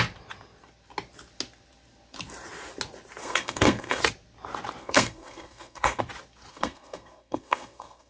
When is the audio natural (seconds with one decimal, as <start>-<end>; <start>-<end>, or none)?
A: 0.0-3.2; 4.0-4.8; 6.0-6.5